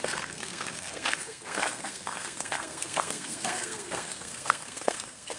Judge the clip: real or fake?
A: fake